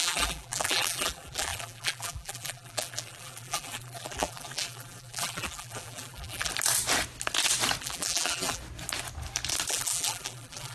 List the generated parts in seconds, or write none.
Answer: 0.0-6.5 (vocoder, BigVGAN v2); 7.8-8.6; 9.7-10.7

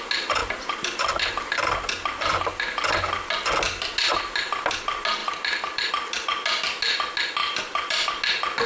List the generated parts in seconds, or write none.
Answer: 0.4-1.3 (vocoder, BigVGAN v2); 5.2-5.9; 7.4-8.1

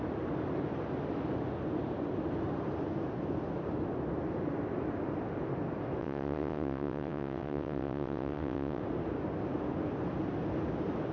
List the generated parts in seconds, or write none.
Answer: 6.0-8.8 (vocoder, WaveNeXt)

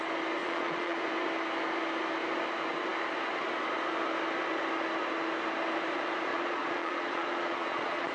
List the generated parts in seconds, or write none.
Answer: 0.4-1.0 (vocoder, Vocos); 6.3-8.1